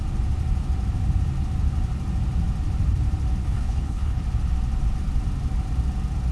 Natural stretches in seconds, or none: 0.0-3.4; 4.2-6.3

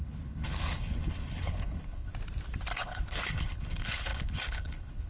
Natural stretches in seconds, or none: 2.1-2.8